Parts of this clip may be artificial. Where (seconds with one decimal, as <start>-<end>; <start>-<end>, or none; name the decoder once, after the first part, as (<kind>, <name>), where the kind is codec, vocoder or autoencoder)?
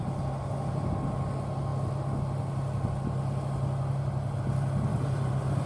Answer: 4.9-5.7 (vocoder, BigVGAN v2)